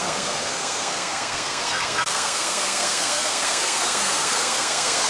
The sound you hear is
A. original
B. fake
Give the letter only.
B